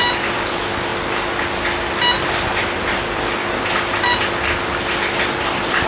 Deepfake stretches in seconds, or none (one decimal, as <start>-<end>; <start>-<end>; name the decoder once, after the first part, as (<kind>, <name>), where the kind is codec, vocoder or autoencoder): 2.5-5.9 (vocoder, BigVGAN v2)